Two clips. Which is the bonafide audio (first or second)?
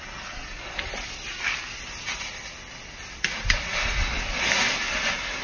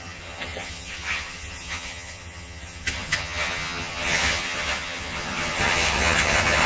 first